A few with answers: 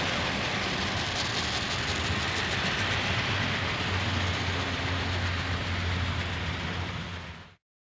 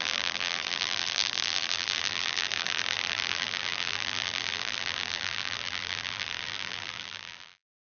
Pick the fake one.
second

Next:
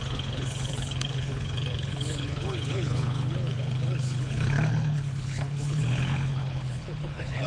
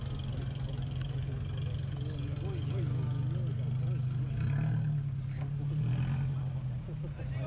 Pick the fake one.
first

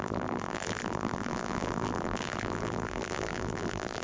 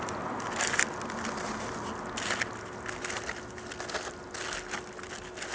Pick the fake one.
first